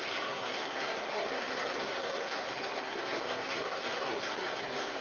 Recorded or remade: remade